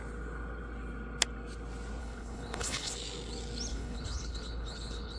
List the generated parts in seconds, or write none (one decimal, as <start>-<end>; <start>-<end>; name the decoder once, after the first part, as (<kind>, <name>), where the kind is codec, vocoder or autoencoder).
2.0-2.9 (codec, HILCodec); 3.7-5.2